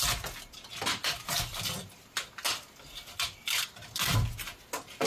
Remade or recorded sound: recorded